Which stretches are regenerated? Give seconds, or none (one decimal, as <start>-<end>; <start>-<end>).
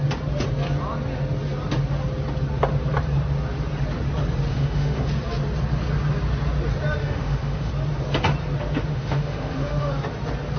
4.5-5.1; 7.0-7.7; 8.9-9.9